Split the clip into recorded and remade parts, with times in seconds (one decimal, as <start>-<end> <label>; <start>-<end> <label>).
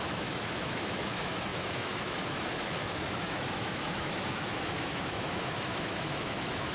0.0-6.7 remade